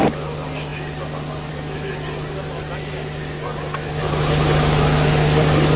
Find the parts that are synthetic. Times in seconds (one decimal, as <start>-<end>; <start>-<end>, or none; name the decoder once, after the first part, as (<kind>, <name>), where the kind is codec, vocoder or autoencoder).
none